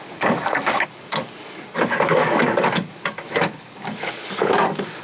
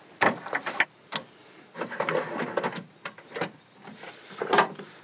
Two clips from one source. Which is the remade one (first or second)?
first